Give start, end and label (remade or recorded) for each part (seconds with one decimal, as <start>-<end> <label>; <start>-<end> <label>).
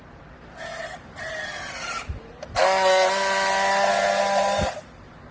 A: 0.0-5.3 recorded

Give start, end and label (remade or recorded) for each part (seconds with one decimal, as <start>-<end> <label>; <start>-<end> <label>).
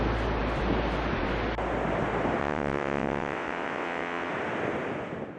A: 0.0-2.4 recorded; 2.4-4.3 remade; 4.3-5.4 recorded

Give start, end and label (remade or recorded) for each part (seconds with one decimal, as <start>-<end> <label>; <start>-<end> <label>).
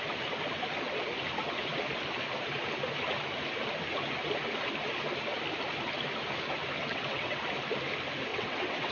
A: 0.0-6.8 recorded; 6.8-7.4 remade; 7.4-8.3 recorded; 8.3-8.9 remade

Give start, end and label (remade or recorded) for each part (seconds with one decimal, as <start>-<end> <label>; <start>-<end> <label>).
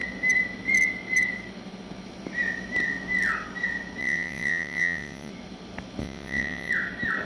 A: 0.0-4.0 recorded; 4.0-5.3 remade; 5.3-6.0 recorded; 6.0-6.7 remade; 6.7-7.3 recorded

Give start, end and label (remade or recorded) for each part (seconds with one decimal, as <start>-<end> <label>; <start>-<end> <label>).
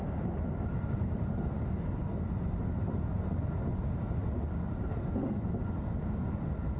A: 0.0-6.8 recorded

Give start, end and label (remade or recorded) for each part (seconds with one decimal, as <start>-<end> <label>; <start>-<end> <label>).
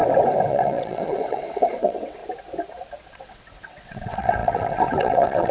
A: 0.0-0.5 recorded; 0.5-2.2 remade; 2.2-3.1 recorded; 3.1-5.5 remade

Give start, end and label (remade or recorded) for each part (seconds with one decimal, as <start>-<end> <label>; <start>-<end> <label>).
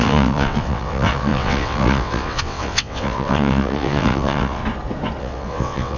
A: 0.0-4.6 remade; 4.6-5.2 recorded; 5.2-6.0 remade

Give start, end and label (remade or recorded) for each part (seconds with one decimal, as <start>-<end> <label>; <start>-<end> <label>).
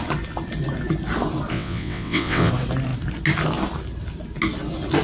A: 0.0-1.5 recorded; 1.5-2.5 remade; 2.5-5.0 recorded